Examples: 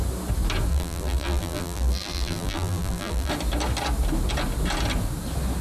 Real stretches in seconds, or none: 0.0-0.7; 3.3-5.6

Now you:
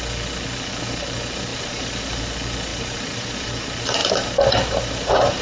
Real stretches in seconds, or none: 0.0-1.5; 2.2-2.7; 3.5-4.0